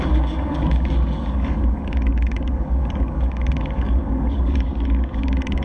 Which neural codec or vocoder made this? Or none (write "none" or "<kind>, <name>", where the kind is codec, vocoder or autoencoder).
codec, DAC